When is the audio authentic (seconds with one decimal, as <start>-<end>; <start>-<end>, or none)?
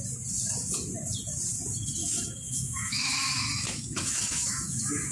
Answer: 0.0-2.0